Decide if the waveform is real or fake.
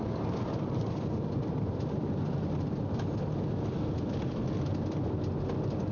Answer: real